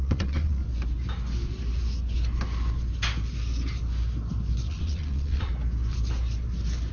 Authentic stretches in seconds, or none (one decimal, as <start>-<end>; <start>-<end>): 0.6-4.7; 5.5-6.9